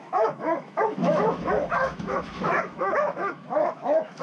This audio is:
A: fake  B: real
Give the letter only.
A